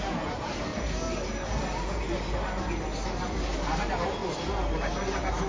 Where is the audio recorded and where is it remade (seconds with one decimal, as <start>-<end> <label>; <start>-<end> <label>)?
0.0-5.5 recorded